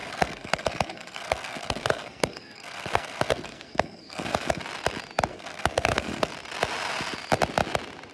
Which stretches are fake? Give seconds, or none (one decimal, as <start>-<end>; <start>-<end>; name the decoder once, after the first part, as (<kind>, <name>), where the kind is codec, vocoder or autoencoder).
0.0-4.6 (codec, SNAC); 5.3-6.3